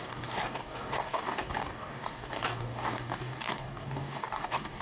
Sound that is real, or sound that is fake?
fake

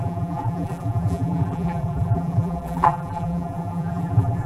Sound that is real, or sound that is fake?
fake